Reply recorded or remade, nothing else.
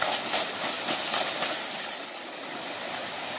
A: recorded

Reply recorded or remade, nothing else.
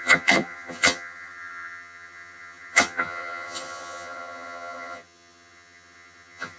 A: remade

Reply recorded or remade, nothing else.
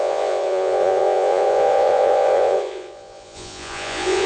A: remade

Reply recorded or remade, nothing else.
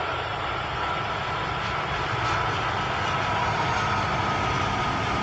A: recorded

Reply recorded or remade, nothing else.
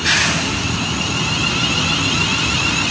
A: recorded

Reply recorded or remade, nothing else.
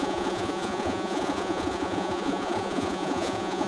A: remade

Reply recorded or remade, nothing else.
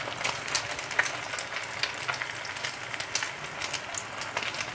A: recorded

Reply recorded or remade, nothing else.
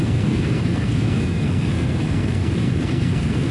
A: remade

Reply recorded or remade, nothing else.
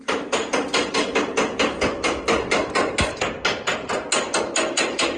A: recorded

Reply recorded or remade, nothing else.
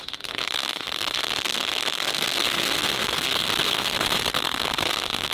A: remade